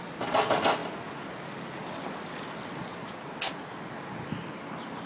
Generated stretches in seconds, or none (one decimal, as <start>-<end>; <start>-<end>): none